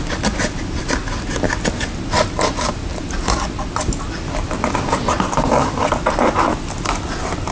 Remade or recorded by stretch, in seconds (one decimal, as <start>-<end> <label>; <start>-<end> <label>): 0.0-7.5 recorded